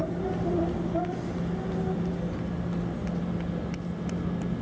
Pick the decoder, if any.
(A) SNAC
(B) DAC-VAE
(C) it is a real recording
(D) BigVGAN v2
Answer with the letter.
C